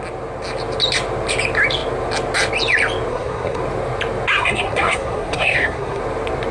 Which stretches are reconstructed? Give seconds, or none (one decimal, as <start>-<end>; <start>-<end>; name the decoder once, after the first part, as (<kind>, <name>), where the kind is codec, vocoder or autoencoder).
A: 3.1-3.6 (codec, SNAC); 4.4-6.0